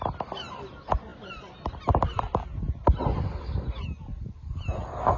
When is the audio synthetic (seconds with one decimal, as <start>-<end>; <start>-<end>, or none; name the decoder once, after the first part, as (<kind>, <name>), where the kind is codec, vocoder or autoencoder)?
none